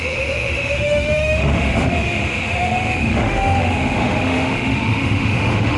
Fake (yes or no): yes